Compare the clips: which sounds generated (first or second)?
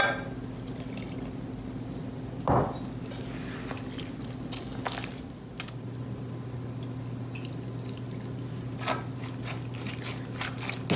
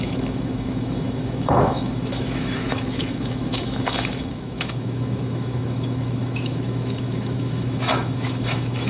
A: second